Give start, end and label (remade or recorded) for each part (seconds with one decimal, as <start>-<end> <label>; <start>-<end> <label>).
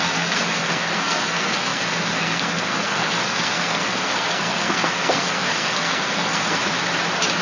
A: 0.0-6.6 remade; 6.6-7.4 recorded